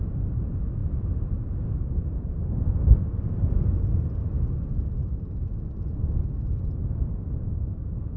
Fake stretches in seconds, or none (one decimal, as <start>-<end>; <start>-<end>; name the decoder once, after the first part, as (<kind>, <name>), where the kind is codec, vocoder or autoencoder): none